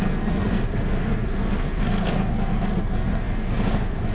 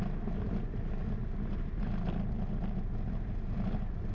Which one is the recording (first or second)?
second